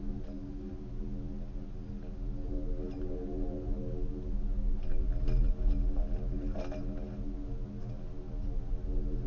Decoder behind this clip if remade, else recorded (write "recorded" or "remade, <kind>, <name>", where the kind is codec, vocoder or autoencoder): recorded